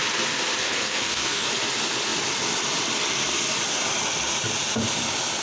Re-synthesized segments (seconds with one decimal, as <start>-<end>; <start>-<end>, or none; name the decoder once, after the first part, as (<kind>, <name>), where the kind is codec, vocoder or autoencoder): 0.6-1.5 (codec, SNAC)